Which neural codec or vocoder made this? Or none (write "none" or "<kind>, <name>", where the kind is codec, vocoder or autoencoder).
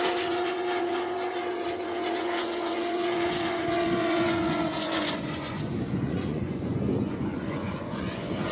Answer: vocoder, Vocos